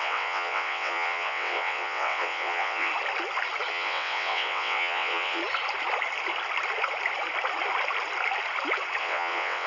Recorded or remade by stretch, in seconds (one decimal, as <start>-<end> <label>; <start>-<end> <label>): 0.0-2.9 remade; 2.9-3.7 recorded; 3.7-5.4 remade; 5.4-9.0 recorded; 9.0-9.7 remade